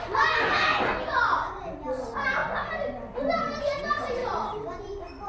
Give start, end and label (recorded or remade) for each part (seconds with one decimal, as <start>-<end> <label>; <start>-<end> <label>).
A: 0.0-5.3 recorded